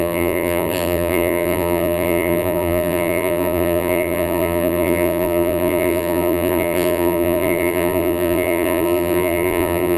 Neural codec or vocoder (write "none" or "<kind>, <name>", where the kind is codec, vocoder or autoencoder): vocoder, BigVGAN v2